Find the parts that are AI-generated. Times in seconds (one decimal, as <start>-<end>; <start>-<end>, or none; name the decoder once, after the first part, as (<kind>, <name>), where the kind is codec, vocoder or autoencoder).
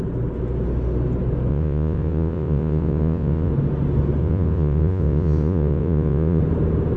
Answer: 1.5-3.5 (vocoder, Vocos); 4.2-6.4